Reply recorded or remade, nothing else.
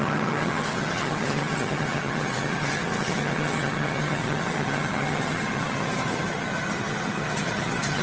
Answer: remade